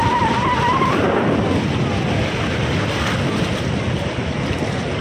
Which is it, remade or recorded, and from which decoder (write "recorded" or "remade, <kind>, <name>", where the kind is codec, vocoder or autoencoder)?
recorded